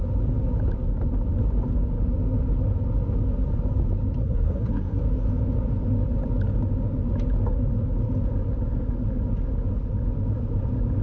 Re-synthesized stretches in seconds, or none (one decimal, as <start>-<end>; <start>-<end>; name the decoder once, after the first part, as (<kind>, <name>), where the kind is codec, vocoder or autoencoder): 4.2-5.0 (codec, SNAC)